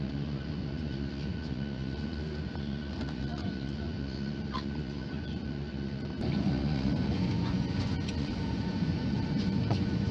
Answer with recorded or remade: remade